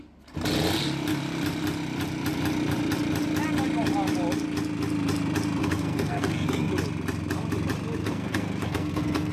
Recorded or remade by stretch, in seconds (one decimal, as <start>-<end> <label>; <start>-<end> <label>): 0.0-5.6 recorded; 5.6-6.7 remade; 6.7-8.0 recorded; 8.0-9.3 remade